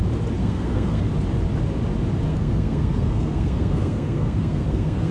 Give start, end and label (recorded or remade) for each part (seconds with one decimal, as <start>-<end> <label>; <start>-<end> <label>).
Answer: 0.0-0.4 recorded; 0.4-1.0 remade; 1.0-2.3 recorded; 2.3-5.1 remade